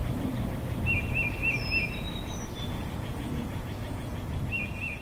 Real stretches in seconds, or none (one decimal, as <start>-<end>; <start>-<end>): 0.0-2.7